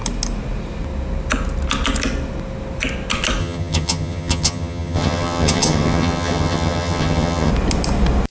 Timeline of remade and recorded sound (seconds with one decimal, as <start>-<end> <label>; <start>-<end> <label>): 0.0-3.4 recorded; 3.4-7.5 remade; 7.5-8.3 recorded